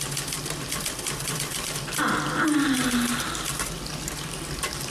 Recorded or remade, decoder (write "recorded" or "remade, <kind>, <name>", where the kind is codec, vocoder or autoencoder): remade, vocoder, BigVGAN v2